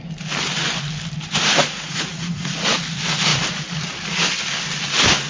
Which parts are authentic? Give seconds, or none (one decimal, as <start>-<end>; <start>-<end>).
0.0-1.6; 2.5-5.3